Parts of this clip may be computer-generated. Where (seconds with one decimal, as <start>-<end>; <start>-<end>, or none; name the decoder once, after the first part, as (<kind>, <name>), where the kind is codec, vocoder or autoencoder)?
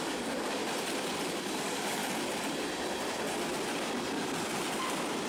0.0-0.6 (codec, DAC); 1.6-2.0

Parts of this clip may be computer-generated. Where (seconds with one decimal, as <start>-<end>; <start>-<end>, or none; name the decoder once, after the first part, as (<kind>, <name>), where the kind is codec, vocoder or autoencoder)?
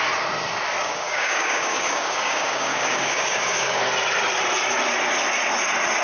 0.8-3.8 (codec, DAC)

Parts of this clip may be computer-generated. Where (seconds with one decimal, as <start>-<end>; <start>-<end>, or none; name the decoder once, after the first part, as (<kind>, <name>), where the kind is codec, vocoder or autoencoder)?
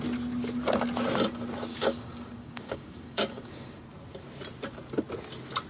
1.7-3.8 (codec, DAC)